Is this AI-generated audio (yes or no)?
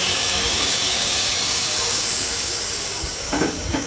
yes